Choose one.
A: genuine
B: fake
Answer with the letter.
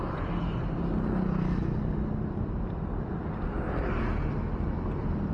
A